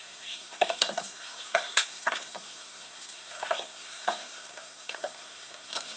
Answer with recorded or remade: remade